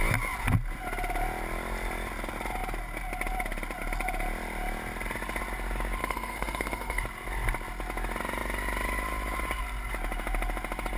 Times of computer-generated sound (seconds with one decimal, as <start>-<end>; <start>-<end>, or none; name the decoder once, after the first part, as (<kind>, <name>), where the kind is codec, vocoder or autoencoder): 6.0-7.0 (codec, SNAC)